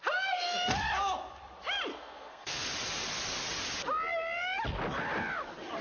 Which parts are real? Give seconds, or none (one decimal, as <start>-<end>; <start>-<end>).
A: 0.0-1.9; 2.6-5.8

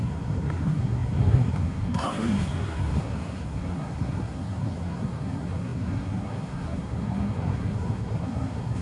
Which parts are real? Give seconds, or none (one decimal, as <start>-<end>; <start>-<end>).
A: none

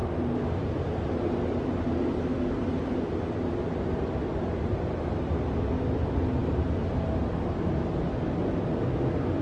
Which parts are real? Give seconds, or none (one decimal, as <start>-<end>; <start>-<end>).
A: 0.0-9.4

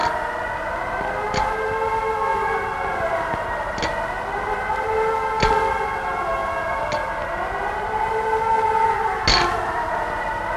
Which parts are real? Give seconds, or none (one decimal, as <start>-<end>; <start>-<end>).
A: 0.0-10.6

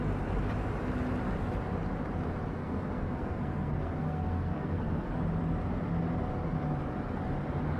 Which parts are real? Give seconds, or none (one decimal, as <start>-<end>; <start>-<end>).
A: 0.0-2.5; 5.1-7.8

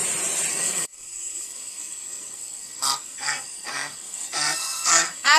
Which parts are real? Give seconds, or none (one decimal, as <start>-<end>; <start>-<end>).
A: 0.0-0.5

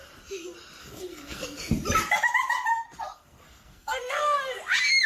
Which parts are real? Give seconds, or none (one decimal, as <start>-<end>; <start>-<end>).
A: 0.0-0.8; 1.7-2.7; 4.6-5.1